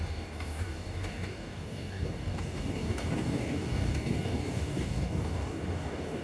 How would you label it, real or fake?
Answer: fake